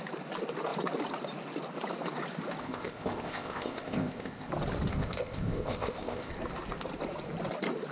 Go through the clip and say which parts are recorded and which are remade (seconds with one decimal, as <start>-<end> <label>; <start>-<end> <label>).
0.0-2.6 recorded; 2.6-4.5 remade; 4.5-4.9 recorded; 4.9-6.3 remade; 6.3-7.9 recorded